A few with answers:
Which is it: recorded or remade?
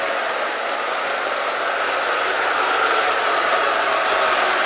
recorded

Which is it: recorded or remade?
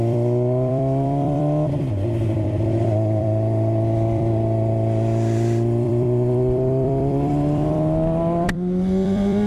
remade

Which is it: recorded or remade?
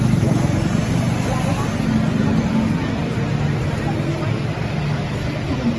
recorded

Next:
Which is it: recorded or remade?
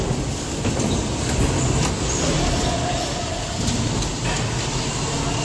recorded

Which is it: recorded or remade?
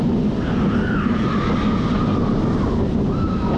recorded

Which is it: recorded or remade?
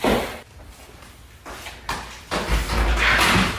recorded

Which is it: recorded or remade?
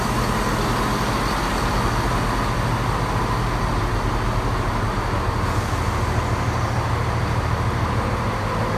recorded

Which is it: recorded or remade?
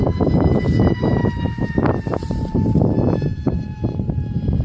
remade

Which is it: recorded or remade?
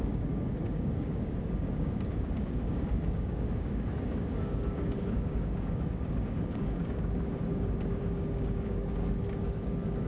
remade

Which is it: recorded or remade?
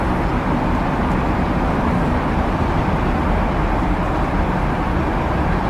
recorded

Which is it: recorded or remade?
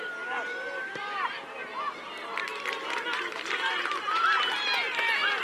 recorded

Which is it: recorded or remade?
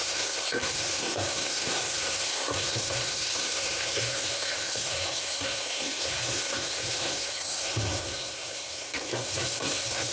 remade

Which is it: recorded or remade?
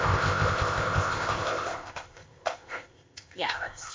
remade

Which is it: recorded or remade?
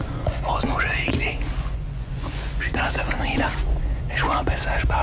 remade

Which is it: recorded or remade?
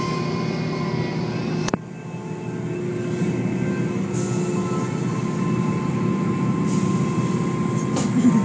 recorded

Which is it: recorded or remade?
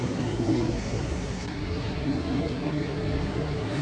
remade